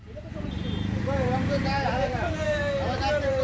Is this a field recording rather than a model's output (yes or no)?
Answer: no